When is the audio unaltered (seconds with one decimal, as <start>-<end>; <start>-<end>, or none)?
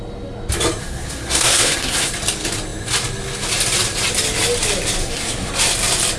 0.0-0.8; 2.1-5.0; 5.5-6.2